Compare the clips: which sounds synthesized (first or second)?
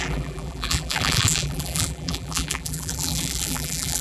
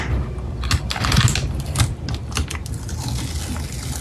first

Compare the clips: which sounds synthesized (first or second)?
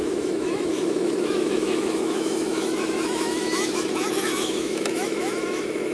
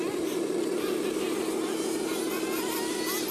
first